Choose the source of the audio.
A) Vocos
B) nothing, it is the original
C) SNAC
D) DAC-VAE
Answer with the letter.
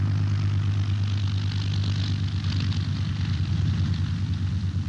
B